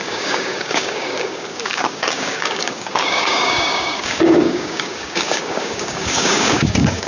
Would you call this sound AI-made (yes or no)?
yes